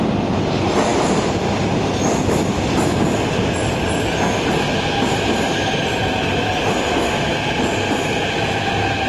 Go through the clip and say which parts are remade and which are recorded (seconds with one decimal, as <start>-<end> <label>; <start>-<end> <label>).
0.0-9.1 recorded